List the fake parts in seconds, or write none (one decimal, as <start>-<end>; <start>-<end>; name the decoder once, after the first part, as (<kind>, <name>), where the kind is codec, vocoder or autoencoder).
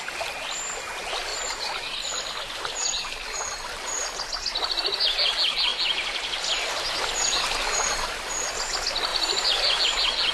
9.1-9.8 (vocoder, BigVGAN v2)